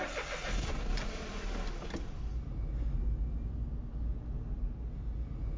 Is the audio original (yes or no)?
yes